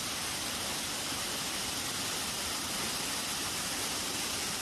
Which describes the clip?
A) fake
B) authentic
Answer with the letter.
A